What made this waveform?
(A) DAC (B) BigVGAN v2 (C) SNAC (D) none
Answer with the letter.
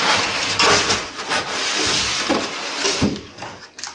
D